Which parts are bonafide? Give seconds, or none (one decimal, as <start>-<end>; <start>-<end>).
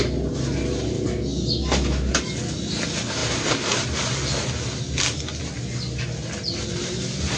0.0-7.4